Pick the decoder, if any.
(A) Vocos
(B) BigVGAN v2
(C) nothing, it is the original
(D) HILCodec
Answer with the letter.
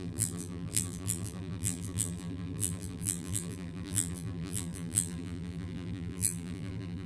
B